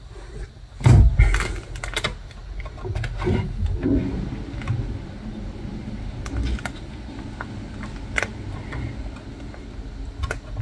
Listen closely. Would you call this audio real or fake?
real